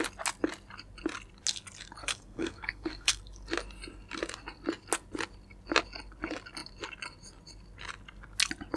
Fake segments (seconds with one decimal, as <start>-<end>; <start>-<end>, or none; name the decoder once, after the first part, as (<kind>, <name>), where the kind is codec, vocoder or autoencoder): 2.0-3.2 (codec, SNAC)